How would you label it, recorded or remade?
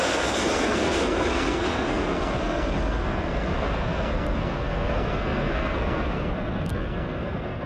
remade